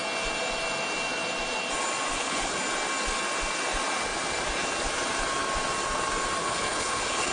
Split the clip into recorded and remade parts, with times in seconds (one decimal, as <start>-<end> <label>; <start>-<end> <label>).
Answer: 0.0-2.1 recorded; 2.1-2.6 remade; 2.6-6.4 recorded; 6.4-7.3 remade